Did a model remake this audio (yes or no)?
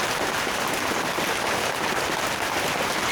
no